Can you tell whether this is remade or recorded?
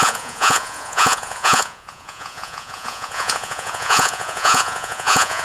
remade